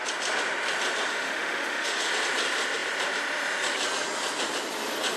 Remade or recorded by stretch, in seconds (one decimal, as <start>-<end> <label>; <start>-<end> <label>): 0.0-1.1 recorded; 1.1-2.1 remade; 2.1-5.2 recorded